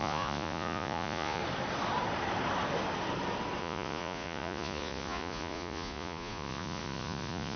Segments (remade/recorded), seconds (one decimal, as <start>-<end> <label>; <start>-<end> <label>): 0.0-1.4 remade; 1.4-3.6 recorded; 3.6-7.6 remade